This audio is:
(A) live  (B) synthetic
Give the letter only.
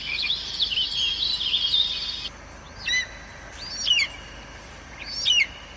A